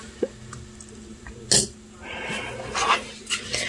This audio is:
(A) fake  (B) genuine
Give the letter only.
B